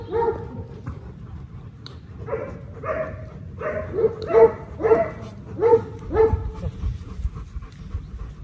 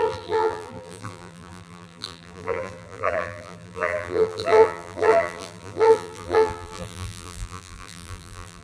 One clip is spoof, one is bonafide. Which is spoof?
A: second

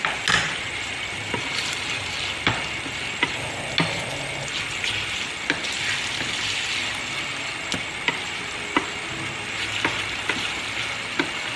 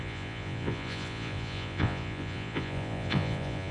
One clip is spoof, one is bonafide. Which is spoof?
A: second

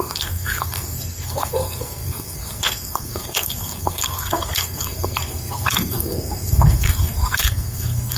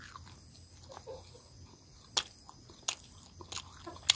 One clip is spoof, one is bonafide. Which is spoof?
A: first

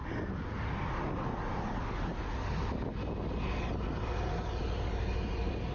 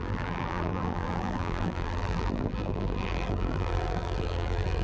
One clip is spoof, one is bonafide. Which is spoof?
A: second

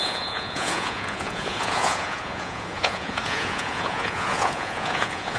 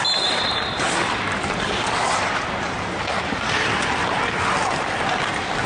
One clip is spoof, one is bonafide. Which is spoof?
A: first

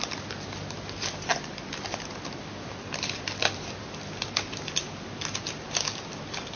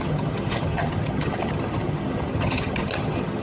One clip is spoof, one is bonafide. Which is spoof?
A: second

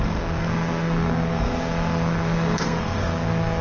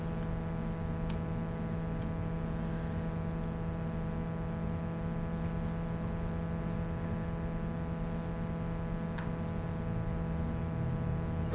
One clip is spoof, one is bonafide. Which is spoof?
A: first